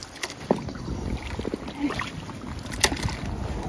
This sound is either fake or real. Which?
real